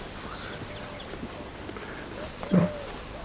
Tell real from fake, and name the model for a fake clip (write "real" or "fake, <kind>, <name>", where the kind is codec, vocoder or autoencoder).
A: real